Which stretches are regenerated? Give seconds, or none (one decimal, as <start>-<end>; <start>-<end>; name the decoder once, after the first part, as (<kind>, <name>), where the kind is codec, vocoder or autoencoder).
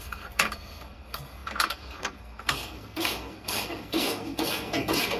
0.0-5.2 (codec, SNAC)